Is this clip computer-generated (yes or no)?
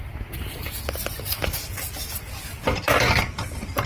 no